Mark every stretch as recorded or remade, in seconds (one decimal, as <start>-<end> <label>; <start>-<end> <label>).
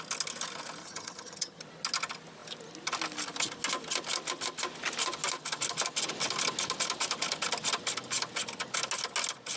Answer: 0.0-0.8 recorded; 0.8-1.6 remade; 1.6-9.6 recorded